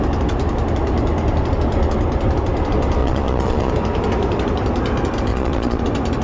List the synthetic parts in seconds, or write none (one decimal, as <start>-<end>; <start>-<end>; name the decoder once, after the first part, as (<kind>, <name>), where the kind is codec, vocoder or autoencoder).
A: 3.0-3.7 (vocoder, Vocos); 5.3-5.8